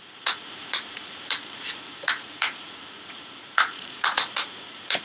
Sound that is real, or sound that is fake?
fake